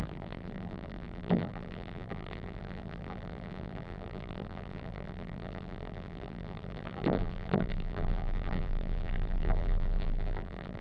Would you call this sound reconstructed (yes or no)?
yes